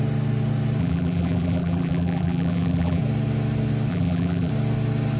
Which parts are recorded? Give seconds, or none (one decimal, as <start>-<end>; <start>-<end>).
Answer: 0.0-0.8; 3.0-3.9; 4.5-5.2